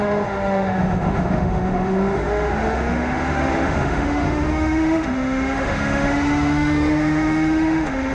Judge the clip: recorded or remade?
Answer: remade